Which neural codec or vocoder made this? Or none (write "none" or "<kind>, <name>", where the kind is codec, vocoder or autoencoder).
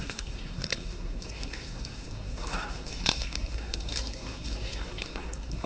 codec, SNAC